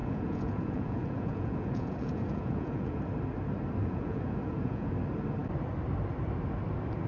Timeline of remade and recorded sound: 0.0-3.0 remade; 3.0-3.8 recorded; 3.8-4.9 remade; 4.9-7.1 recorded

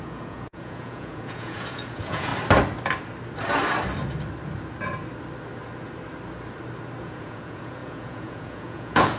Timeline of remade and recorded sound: 0.0-2.3 remade; 2.3-7.0 recorded; 7.0-9.2 remade

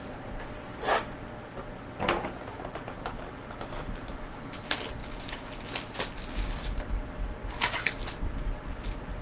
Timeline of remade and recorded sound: 0.0-5.0 recorded; 5.0-5.5 remade; 5.5-9.2 recorded

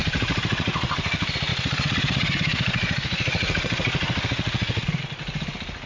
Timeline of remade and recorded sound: 0.0-0.9 remade; 0.9-1.5 recorded; 1.5-5.0 remade; 5.0-5.9 recorded

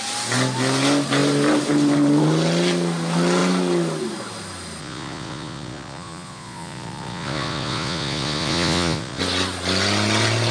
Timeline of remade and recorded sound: 0.0-4.8 recorded; 4.8-9.2 remade; 9.2-10.5 recorded

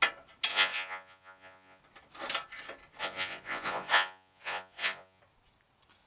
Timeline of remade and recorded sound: 0.0-0.5 recorded; 0.5-1.8 remade; 1.8-3.0 recorded; 3.0-5.2 remade; 5.2-6.1 recorded

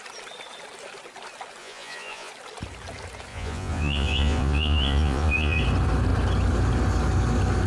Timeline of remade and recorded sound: 0.0-1.6 recorded; 1.6-2.3 remade; 2.3-3.3 recorded; 3.3-5.6 remade; 5.6-7.7 recorded